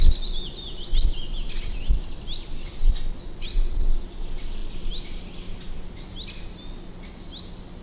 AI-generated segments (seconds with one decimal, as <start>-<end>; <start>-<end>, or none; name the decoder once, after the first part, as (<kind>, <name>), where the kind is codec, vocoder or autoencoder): none